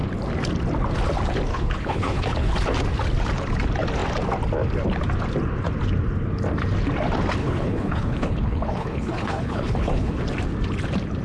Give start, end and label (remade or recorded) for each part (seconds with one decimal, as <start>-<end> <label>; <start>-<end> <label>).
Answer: 0.0-1.5 recorded; 1.5-2.5 remade; 2.5-7.4 recorded; 7.4-10.2 remade; 10.2-11.2 recorded